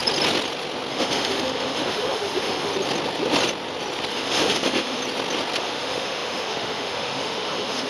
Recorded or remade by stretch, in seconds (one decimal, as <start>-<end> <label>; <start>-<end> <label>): 0.0-0.9 recorded; 0.9-2.7 remade; 2.7-4.1 recorded; 4.1-5.0 remade; 5.0-5.6 recorded; 5.6-7.9 remade